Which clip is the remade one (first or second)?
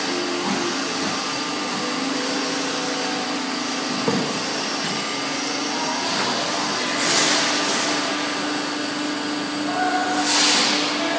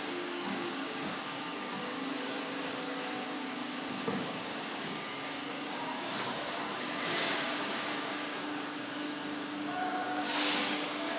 second